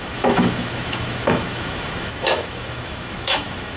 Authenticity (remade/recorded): remade